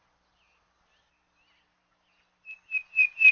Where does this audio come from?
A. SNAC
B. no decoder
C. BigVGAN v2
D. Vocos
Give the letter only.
B